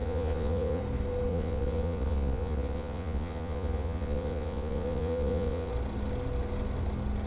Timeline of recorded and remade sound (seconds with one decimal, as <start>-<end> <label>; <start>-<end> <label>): 0.0-0.8 remade; 0.8-1.3 recorded; 1.3-5.7 remade; 5.7-7.3 recorded